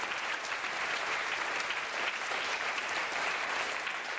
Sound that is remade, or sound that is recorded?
remade